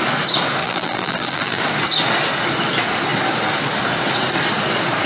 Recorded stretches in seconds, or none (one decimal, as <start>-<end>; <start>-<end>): 0.0-0.6; 1.6-5.1